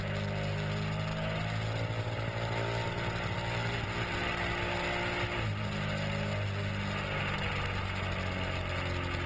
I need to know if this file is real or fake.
real